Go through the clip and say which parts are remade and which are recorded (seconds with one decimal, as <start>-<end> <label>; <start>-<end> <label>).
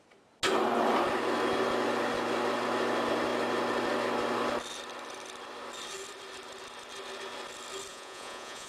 0.0-7.9 recorded; 7.9-8.7 remade